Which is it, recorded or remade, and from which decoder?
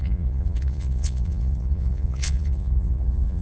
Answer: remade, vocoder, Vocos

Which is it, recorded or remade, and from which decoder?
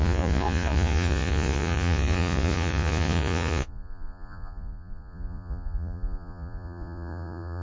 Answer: remade, vocoder, Vocos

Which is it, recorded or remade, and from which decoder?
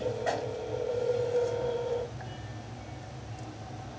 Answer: recorded